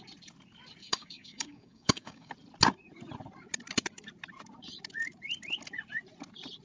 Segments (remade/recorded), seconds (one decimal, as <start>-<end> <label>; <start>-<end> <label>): 0.0-0.8 recorded; 0.8-2.3 remade; 2.3-6.6 recorded